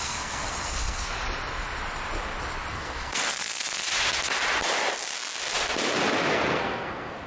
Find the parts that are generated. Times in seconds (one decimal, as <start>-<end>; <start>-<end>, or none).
0.0-1.1; 2.7-3.8; 6.3-7.3